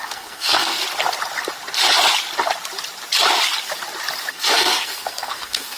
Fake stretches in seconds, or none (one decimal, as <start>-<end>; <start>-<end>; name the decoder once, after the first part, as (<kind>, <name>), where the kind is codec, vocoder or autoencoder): 0.0-0.8 (codec, SNAC); 4.3-5.8